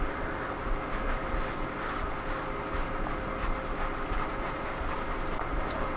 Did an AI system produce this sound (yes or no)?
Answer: no